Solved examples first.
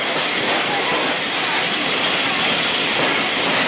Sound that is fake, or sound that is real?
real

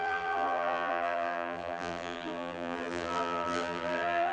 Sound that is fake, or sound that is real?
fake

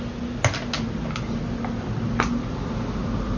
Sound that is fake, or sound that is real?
real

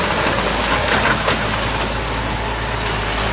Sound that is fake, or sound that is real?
real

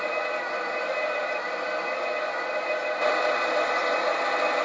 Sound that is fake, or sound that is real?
fake